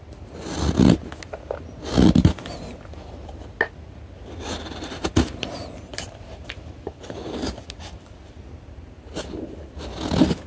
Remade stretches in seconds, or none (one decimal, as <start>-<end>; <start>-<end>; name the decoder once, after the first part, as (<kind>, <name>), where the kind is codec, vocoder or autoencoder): 5.9-8.1 (vocoder, BigVGAN v2)